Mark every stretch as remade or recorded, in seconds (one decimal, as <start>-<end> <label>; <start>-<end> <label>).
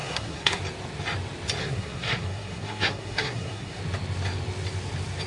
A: 0.0-0.6 remade; 0.6-1.6 recorded; 1.6-3.8 remade; 3.8-5.3 recorded